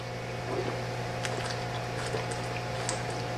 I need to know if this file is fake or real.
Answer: real